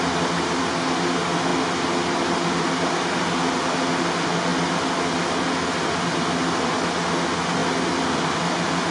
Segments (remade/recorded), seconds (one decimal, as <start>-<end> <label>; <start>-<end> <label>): 0.0-8.9 recorded